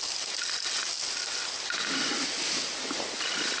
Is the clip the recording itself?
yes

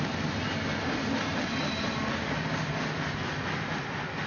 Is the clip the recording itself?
yes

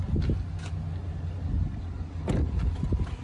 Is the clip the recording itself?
yes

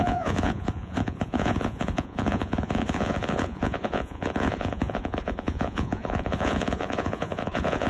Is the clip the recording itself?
no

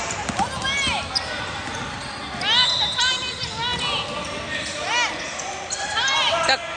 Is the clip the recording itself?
yes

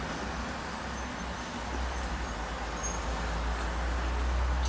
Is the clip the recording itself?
yes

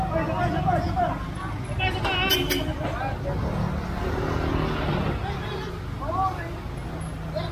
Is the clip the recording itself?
yes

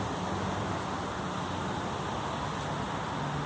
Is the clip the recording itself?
yes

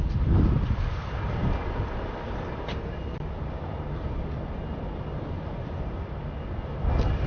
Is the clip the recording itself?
yes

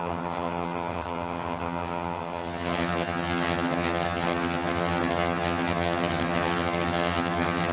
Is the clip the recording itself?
no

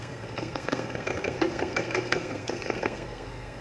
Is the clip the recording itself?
no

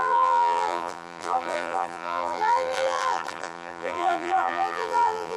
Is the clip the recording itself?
no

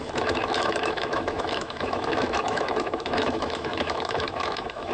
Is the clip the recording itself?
no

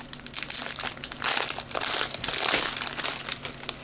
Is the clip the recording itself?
yes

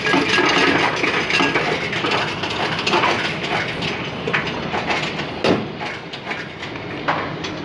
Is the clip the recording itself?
yes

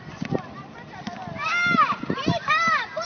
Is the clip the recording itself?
no